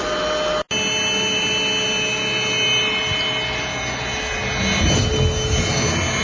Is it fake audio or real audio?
real